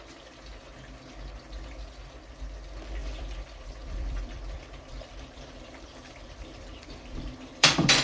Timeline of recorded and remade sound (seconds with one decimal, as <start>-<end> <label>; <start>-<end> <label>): 0.0-3.0 recorded; 3.0-8.0 remade